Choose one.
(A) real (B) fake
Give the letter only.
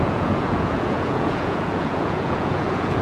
B